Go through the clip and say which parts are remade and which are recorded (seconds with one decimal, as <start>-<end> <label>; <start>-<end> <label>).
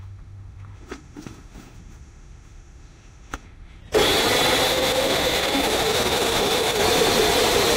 0.0-3.8 remade; 3.8-4.7 recorded; 4.7-6.8 remade; 6.8-7.8 recorded